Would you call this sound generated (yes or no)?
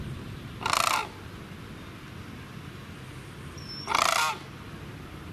yes